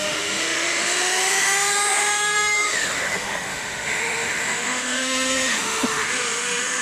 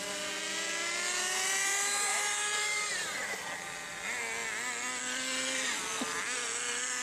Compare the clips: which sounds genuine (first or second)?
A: second